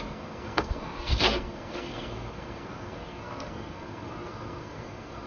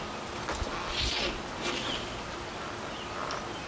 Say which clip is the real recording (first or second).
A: second